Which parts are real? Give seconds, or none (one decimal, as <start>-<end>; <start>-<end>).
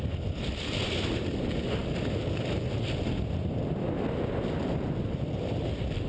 0.0-6.1